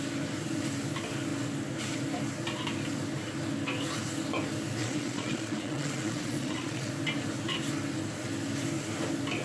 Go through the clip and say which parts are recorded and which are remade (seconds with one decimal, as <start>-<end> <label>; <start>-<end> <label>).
0.0-4.8 recorded; 4.8-6.9 remade; 6.9-9.4 recorded